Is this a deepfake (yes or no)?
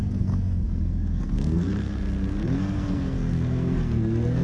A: yes